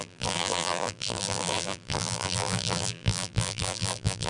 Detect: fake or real fake